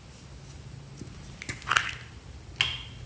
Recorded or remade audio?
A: recorded